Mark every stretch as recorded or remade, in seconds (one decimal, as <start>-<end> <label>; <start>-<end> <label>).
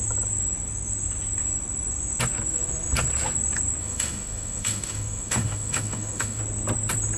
0.0-3.8 recorded; 3.8-6.4 remade; 6.4-7.2 recorded